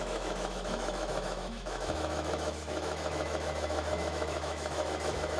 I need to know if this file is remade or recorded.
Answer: remade